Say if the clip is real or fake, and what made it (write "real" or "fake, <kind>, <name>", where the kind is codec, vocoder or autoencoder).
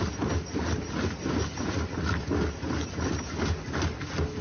real